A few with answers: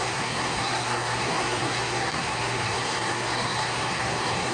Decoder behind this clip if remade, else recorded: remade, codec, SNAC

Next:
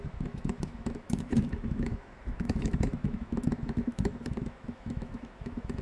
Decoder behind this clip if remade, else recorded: remade, autoencoder, DAC-VAE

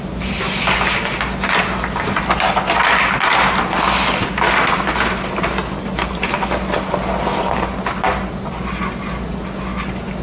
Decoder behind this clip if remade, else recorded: recorded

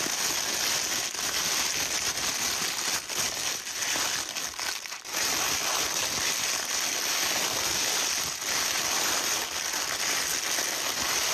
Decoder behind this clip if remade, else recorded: recorded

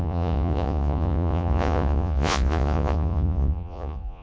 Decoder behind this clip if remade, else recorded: remade, vocoder, Vocos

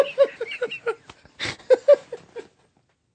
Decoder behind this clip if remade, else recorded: recorded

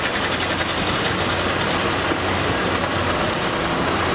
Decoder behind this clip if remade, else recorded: recorded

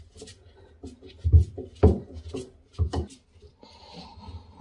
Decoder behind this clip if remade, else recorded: recorded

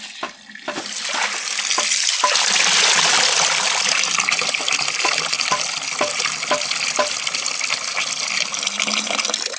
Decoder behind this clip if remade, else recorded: recorded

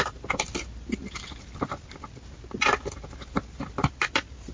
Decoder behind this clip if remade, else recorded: recorded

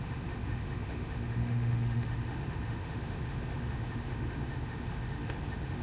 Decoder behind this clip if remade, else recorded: remade, autoencoder, DAC-VAE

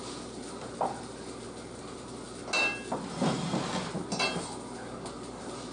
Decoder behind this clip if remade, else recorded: recorded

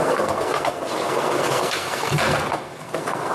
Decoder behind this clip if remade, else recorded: remade, codec, SNAC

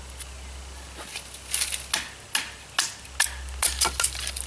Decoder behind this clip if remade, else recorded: recorded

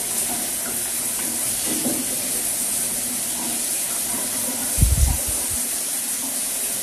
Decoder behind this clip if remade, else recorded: recorded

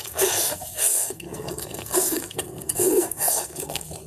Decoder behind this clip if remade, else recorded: remade, codec, SNAC